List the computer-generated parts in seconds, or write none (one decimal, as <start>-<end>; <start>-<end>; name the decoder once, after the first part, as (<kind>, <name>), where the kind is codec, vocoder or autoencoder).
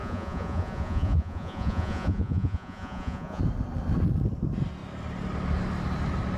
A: 0.0-3.4 (vocoder, Vocos)